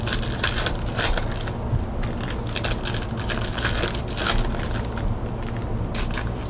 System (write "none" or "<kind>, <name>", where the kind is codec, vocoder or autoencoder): none